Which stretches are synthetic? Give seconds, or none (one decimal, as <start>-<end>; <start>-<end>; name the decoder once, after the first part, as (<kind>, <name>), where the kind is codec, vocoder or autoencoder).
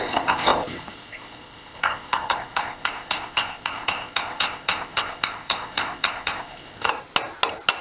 0.0-6.9 (codec, ZipCodec)